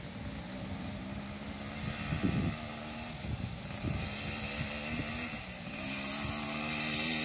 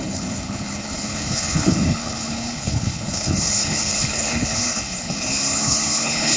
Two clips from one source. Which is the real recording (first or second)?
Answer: first